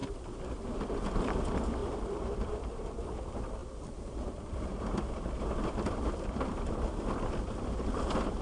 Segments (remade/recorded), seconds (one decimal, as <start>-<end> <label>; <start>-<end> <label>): 0.0-8.4 remade